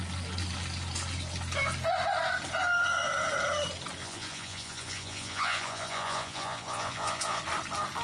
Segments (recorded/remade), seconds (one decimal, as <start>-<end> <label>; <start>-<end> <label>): 0.0-4.0 recorded; 4.0-7.4 remade; 7.4-8.0 recorded